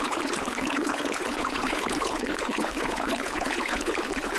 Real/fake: fake